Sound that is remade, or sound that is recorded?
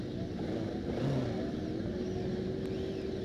recorded